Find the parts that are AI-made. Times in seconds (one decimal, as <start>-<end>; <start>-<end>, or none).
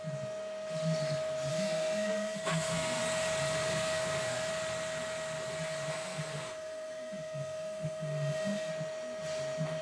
1.5-3.0; 3.6-4.5; 5.9-8.7